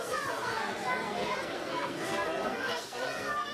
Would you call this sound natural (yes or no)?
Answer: no